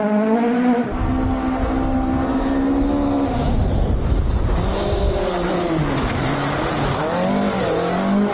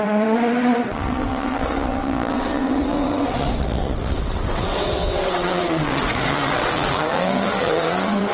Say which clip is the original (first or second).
first